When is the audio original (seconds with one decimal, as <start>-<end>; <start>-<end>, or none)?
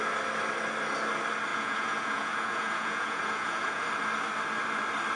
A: 0.0-1.5; 3.8-5.2